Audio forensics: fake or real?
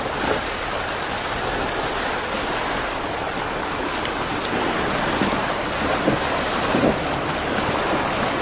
real